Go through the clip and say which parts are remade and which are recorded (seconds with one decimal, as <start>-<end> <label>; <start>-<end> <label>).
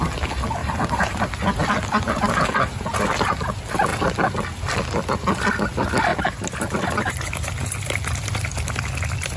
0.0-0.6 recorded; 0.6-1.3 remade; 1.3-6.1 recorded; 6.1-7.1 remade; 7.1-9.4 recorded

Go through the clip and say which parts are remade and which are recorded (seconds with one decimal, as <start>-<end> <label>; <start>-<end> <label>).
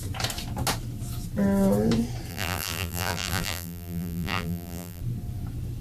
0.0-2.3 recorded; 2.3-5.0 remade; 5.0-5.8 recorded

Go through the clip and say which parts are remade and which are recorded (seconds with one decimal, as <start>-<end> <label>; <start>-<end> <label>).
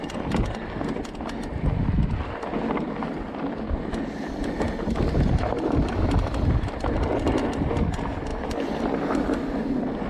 0.0-10.1 recorded